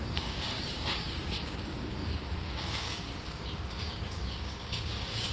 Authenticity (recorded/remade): remade